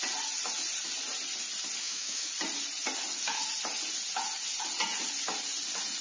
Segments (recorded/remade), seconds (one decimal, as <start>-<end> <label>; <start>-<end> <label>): 0.0-1.8 recorded; 1.8-2.3 remade; 2.3-6.0 recorded